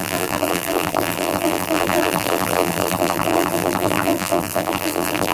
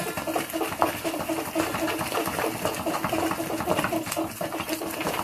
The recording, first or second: second